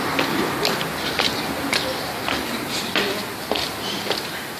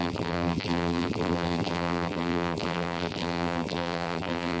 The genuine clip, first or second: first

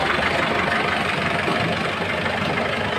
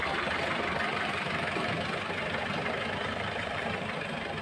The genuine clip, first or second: first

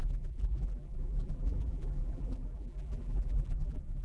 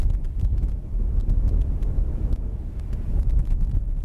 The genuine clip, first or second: second